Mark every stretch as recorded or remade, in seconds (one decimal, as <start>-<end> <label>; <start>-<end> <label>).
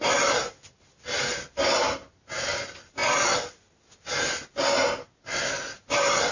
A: 0.0-6.3 recorded